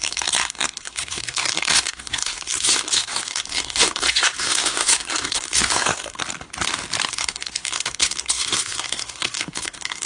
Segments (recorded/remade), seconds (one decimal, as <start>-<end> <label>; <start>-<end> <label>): 0.0-6.2 remade; 6.2-7.1 recorded; 7.1-10.1 remade

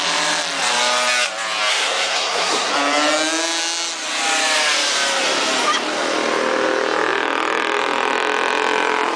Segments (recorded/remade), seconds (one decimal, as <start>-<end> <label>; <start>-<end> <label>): 0.0-1.7 recorded; 1.7-2.7 remade; 2.7-9.2 recorded

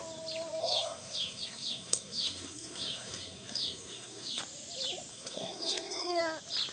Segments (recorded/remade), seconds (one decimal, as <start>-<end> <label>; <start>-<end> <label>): 0.0-0.6 recorded; 0.6-4.4 remade; 4.4-5.1 recorded; 5.1-6.2 remade; 6.2-6.7 recorded